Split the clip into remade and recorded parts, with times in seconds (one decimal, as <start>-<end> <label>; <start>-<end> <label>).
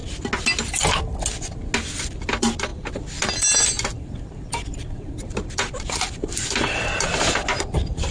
0.0-1.9 recorded; 1.9-8.1 remade